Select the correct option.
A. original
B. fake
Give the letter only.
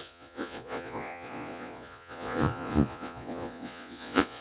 B